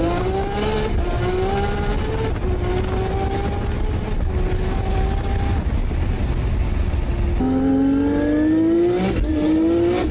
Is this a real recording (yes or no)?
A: yes